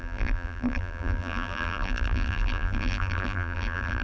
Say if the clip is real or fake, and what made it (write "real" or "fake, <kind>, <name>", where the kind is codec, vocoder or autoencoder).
fake, vocoder, BigVGAN v2